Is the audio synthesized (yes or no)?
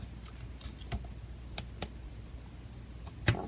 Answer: no